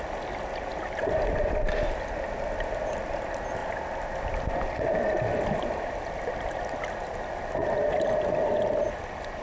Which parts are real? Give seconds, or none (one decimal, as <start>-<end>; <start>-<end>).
0.0-9.4